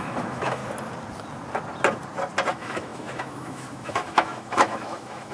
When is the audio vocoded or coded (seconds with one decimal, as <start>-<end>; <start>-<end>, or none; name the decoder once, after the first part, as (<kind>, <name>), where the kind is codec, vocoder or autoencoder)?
0.0-0.6 (autoencoder, DAC-VAE); 2.5-5.3